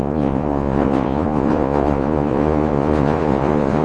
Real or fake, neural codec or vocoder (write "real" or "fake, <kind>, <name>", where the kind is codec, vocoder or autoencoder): fake, vocoder, Vocos